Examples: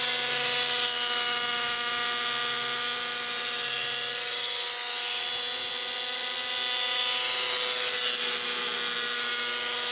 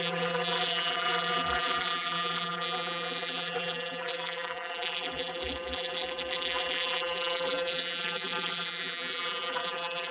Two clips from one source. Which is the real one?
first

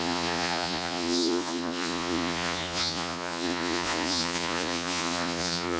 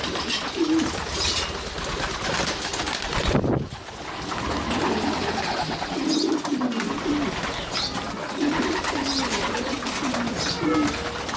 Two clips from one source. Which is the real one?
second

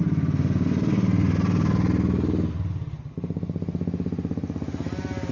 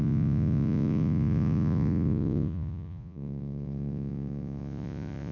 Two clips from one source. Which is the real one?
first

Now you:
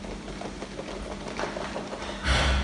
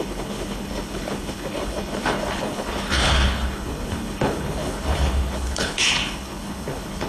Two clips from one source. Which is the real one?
first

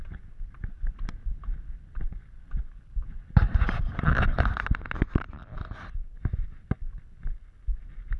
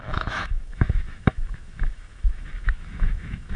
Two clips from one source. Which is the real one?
first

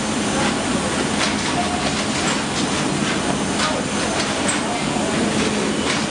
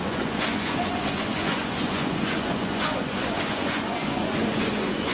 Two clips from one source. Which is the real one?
first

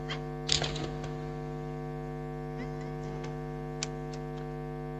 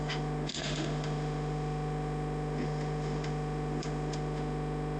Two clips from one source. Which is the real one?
first